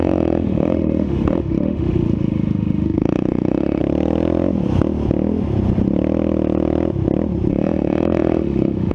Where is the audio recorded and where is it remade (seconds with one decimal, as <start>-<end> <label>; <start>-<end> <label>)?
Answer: 0.0-3.8 remade; 3.8-7.5 recorded; 7.5-8.9 remade